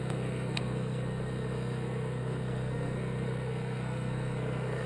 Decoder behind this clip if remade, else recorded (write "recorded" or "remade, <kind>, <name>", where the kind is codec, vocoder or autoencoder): remade, codec, SNAC